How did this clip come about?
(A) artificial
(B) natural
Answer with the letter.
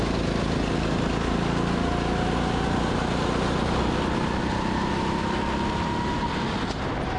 B